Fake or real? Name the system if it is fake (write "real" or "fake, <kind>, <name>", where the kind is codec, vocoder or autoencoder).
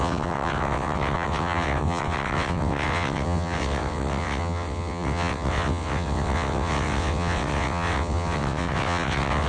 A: fake, vocoder, WaveNeXt